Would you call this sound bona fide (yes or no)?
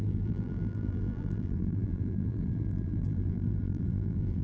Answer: no